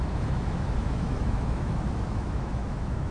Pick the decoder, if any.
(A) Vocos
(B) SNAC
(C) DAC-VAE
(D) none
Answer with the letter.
C